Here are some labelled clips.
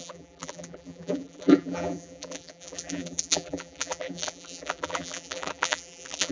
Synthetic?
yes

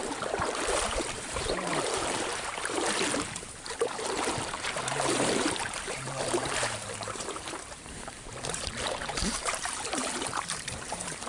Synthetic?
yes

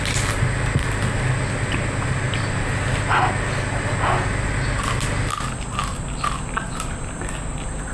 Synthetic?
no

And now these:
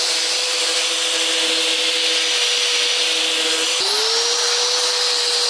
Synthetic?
no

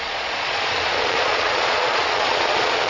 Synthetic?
yes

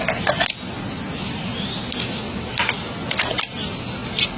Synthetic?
no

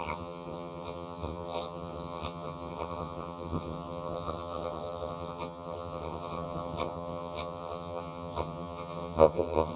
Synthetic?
yes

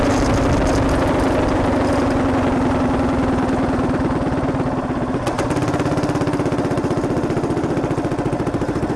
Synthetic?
no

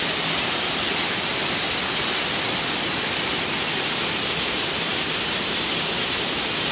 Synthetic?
no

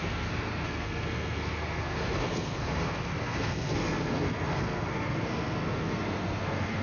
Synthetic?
yes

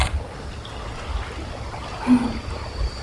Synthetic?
no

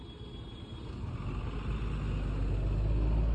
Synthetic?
no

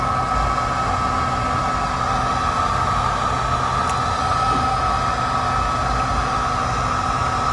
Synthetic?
no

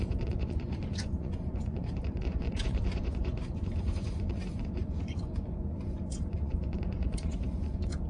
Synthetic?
yes